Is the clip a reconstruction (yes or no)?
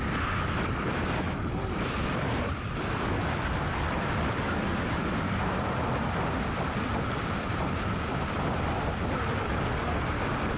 yes